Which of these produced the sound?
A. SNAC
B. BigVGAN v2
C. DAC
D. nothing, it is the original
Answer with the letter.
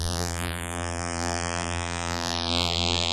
B